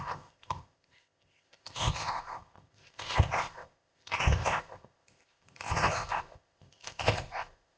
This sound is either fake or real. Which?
fake